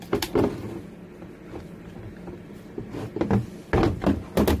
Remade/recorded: recorded